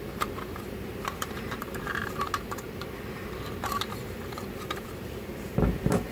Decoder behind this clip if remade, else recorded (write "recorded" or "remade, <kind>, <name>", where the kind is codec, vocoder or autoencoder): remade, vocoder, BigVGAN v2